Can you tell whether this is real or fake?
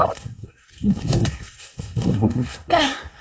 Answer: fake